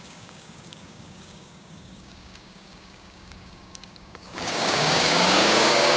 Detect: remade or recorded remade